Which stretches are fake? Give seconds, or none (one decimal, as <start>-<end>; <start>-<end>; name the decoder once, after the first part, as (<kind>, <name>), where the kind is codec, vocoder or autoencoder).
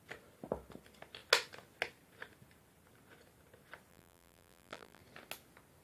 3.9-5.0 (vocoder, BigVGAN v2)